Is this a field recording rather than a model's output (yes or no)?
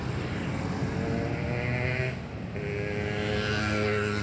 yes